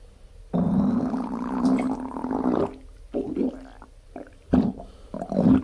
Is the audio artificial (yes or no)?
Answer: no